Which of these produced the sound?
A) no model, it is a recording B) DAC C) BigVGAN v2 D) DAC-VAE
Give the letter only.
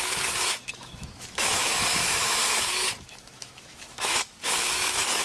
D